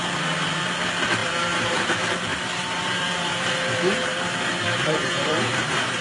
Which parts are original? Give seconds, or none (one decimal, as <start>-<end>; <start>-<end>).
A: 0.0-1.2; 1.8-2.3